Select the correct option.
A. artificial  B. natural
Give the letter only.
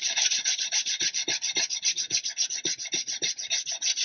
B